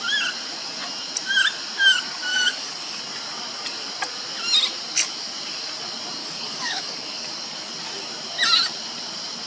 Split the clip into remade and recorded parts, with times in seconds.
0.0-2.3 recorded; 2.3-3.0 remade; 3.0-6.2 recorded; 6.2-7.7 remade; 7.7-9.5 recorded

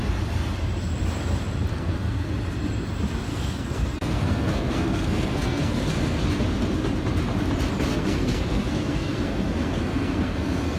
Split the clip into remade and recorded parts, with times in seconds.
0.0-1.7 recorded; 1.7-2.3 remade; 2.3-3.3 recorded; 3.3-6.2 remade; 6.2-7.9 recorded; 7.9-10.8 remade

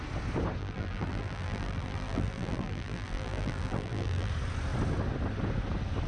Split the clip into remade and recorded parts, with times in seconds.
0.0-0.6 recorded; 0.6-4.3 remade; 4.3-6.1 recorded

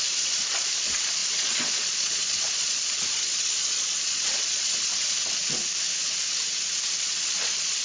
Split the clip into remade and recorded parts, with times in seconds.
0.0-4.9 remade; 4.9-7.0 recorded; 7.0-7.8 remade

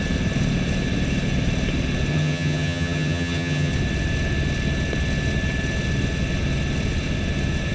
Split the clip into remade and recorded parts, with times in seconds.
0.0-2.1 recorded; 2.1-3.7 remade; 3.7-7.7 recorded

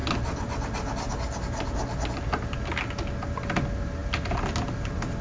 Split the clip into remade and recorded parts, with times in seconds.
0.0-5.2 recorded

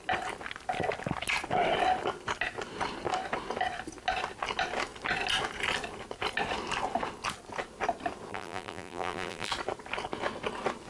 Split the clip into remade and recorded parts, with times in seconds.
0.0-8.3 recorded; 8.3-9.5 remade; 9.5-10.9 recorded

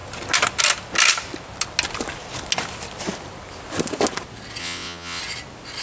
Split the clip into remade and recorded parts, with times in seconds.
0.0-4.6 recorded; 4.6-5.2 remade; 5.2-5.8 recorded